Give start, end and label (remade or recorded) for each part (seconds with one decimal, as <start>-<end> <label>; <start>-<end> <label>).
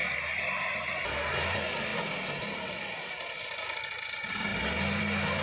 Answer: 0.0-5.4 recorded